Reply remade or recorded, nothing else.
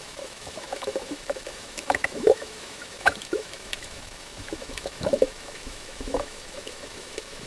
remade